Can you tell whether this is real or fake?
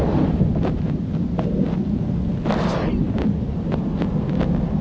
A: real